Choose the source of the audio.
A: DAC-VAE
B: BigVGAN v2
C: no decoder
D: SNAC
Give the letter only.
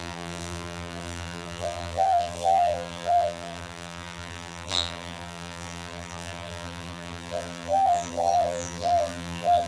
B